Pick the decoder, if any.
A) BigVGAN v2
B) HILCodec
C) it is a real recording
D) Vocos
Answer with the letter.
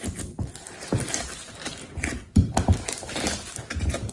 C